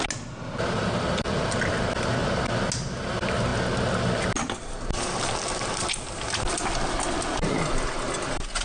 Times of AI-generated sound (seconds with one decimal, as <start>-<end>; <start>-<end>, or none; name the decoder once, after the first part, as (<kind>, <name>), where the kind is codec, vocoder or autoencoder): none

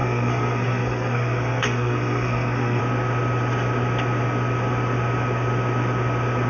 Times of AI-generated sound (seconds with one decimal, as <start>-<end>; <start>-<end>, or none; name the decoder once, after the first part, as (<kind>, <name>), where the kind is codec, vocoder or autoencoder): 0.0-2.8 (codec, SNAC)

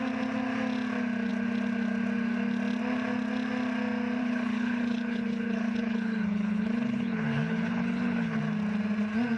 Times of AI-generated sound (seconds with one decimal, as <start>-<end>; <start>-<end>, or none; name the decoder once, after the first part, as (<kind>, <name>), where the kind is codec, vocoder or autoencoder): 4.2-8.4 (codec, HILCodec)

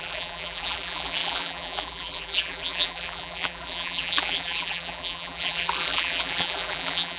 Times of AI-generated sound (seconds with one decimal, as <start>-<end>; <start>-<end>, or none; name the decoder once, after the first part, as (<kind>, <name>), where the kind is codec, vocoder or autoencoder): 0.0-7.2 (vocoder, BigVGAN v2)

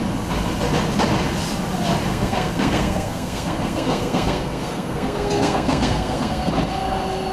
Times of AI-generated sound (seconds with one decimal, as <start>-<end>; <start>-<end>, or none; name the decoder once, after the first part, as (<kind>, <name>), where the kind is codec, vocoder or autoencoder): 2.1-6.5 (codec, SNAC)

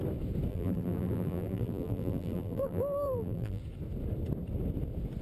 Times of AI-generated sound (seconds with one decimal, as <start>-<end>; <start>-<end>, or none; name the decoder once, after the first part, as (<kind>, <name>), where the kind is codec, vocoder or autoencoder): 0.5-3.6 (vocoder, BigVGAN v2)

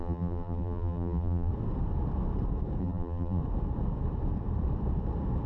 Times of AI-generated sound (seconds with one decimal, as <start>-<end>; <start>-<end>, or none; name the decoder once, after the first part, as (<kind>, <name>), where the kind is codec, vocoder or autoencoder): 0.0-1.5 (vocoder, BigVGAN v2); 2.8-3.4